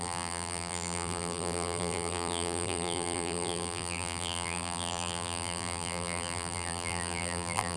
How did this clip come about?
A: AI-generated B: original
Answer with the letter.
A